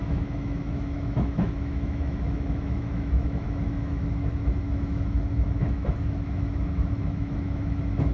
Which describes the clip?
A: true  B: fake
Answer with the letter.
B